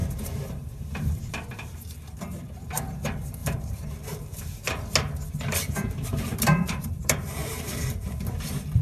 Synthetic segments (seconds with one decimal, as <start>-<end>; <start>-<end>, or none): 0.0-1.3; 3.4-4.7; 6.1-8.2